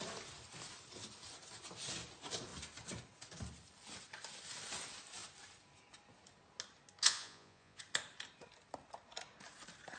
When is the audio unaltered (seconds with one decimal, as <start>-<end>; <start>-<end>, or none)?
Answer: 0.0-7.0; 7.8-10.0